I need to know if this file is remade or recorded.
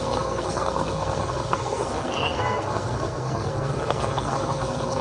remade